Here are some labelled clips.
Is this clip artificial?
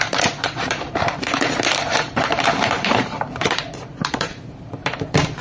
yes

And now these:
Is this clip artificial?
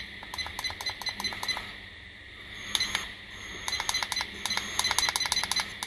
no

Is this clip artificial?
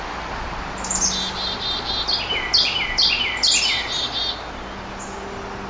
no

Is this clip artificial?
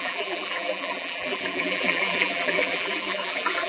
yes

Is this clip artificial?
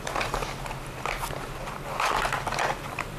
no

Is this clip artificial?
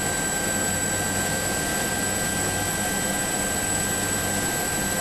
no